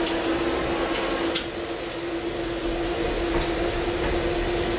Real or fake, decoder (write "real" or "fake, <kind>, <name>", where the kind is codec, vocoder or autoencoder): real